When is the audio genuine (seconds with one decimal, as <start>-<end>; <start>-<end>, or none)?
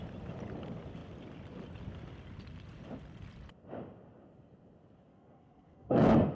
0.0-5.1